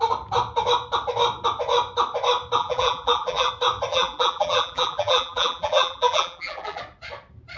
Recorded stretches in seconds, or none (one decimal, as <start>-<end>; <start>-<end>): 0.0-2.6; 3.5-3.9; 6.8-7.6